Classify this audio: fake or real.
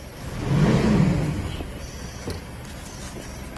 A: real